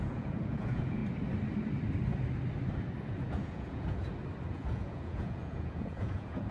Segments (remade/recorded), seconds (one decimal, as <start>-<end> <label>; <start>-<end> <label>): 0.0-1.0 remade; 1.0-3.0 recorded; 3.0-4.0 remade; 4.0-4.5 recorded; 4.5-6.5 remade